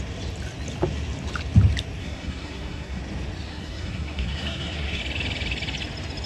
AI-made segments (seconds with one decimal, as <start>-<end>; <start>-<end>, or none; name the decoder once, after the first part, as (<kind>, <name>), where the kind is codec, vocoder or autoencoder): 2.0-3.0 (codec, SNAC); 3.5-5.0